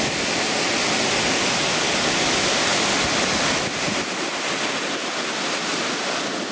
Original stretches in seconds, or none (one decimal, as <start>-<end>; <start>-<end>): 0.0-6.5